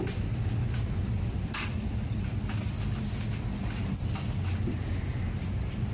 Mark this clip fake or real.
real